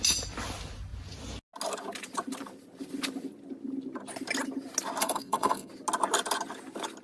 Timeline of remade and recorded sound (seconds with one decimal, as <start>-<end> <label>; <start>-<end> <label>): 0.0-5.0 recorded; 5.0-5.7 remade; 5.7-7.0 recorded